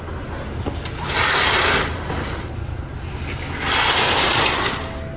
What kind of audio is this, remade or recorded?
recorded